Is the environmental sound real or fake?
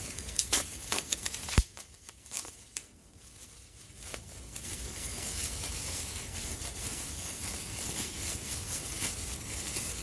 fake